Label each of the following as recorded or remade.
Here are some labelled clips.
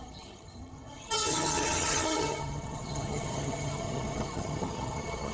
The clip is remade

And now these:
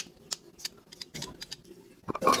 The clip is recorded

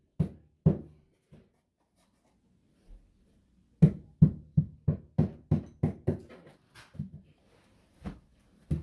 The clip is recorded